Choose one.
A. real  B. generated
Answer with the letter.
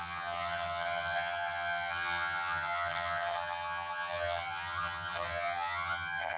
B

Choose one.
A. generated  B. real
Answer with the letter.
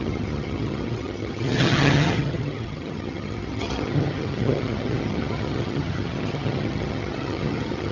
A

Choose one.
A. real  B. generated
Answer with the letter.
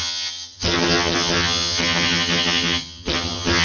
B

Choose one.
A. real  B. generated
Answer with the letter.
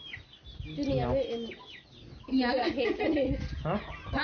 A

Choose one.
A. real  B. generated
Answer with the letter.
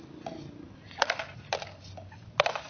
A